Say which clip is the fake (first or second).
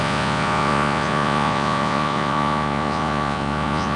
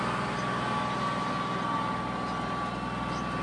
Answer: first